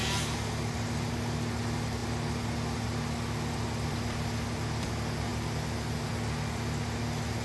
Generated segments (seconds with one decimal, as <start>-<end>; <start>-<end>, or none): none